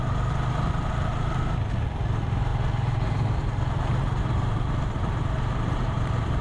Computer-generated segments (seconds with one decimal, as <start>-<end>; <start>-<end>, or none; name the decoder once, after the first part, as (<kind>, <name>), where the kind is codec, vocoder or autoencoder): 2.5-6.4 (vocoder, BigVGAN v2)

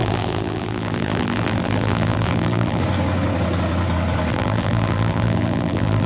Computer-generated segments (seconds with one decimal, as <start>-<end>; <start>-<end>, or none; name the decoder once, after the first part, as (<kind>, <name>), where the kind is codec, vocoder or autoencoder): 0.0-2.8 (vocoder, BigVGAN v2); 4.3-6.1